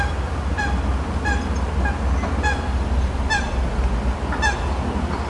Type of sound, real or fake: real